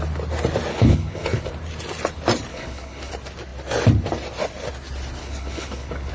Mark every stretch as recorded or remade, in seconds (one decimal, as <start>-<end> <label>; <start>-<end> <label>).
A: 0.0-0.7 recorded; 0.7-1.5 remade; 1.5-2.5 recorded; 2.5-3.1 remade; 3.1-5.2 recorded; 5.2-6.1 remade